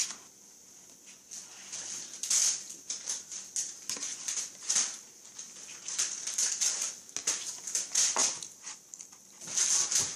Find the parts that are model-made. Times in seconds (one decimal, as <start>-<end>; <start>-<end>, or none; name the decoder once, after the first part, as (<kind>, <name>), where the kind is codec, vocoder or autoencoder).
2.4-6.9 (vocoder, BigVGAN v2); 8.2-9.0